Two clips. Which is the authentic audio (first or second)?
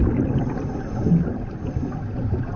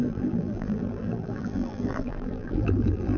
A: first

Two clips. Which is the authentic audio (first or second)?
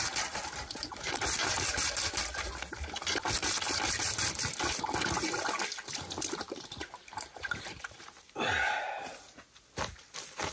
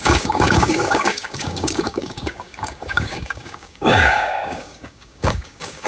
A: first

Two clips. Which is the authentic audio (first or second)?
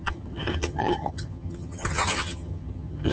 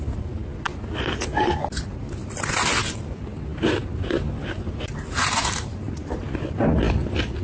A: second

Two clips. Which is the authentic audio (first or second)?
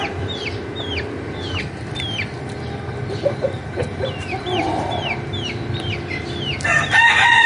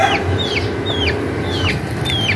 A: second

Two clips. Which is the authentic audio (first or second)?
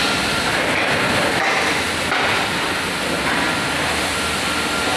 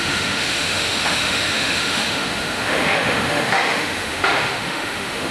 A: first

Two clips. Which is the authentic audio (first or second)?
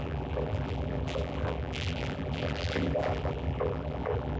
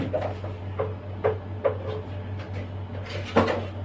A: second